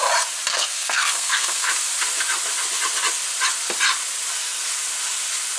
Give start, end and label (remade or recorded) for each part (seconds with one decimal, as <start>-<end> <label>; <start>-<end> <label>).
0.0-0.5 recorded; 0.5-1.7 remade; 1.7-5.6 recorded